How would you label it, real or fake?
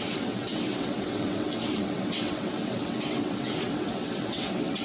fake